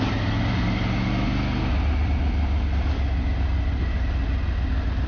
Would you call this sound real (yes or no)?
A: yes